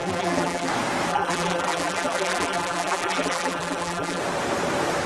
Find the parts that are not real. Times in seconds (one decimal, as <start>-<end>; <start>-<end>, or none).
0.0-0.7; 1.1-4.2